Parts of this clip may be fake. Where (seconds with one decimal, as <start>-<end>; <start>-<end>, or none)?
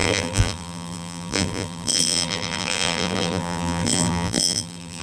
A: 0.0-5.0